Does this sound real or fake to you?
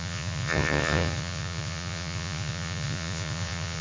fake